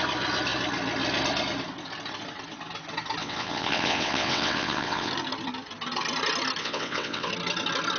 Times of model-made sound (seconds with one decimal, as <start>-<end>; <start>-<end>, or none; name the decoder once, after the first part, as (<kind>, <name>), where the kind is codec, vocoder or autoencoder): 3.2-5.1 (vocoder, WaveNeXt); 6.6-7.3